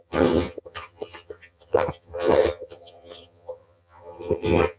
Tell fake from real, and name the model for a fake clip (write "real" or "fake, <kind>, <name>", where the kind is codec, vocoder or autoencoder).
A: fake, vocoder, HiFi-GAN